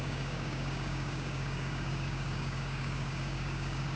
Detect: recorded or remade remade